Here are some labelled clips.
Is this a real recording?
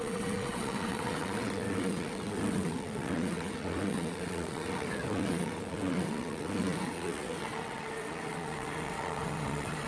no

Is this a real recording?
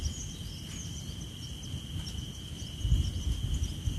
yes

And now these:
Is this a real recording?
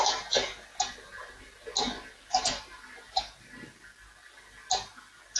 yes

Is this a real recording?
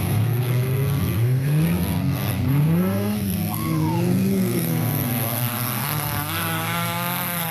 no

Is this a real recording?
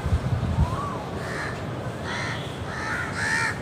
no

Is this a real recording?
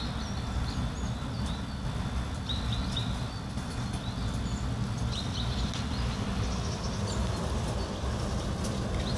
yes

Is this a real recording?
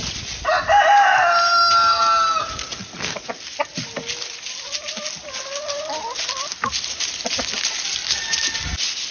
yes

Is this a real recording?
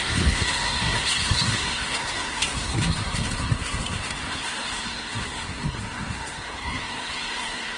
no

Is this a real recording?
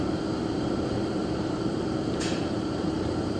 no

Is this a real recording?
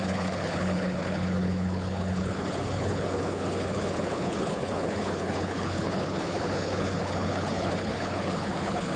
no